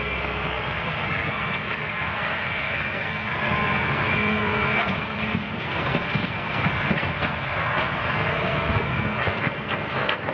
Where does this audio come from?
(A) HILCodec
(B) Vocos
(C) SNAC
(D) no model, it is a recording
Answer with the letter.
C